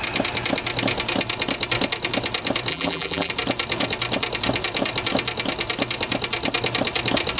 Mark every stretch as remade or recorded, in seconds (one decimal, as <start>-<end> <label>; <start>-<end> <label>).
0.0-2.7 recorded; 2.7-3.3 remade; 3.3-7.4 recorded

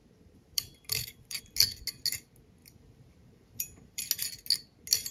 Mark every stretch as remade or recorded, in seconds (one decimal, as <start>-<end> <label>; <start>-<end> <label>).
0.0-1.4 remade; 1.4-2.6 recorded; 2.6-4.0 remade; 4.0-5.1 recorded